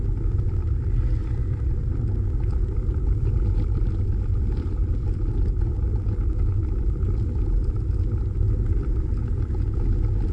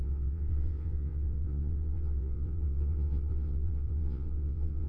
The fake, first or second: second